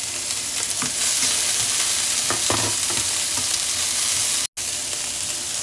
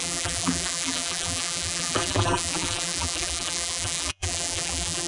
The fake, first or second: second